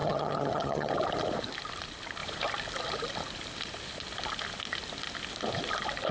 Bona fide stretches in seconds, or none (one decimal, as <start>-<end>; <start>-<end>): 0.9-6.1

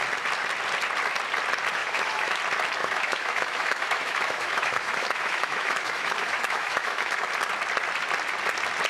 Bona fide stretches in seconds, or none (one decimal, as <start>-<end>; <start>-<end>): 0.0-1.8; 2.4-2.8; 7.3-8.9

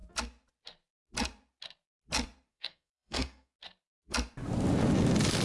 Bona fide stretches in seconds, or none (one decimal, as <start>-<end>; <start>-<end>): 0.0-2.5; 3.5-5.4

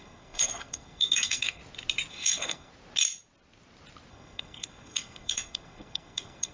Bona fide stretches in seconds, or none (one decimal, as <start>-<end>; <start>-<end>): 1.6-2.1; 2.7-4.1

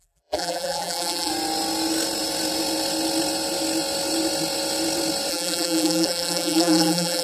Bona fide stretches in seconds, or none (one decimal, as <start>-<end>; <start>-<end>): 1.3-5.3

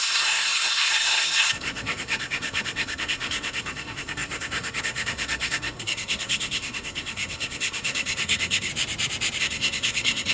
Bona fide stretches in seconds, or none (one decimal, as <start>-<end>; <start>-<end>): 8.7-9.4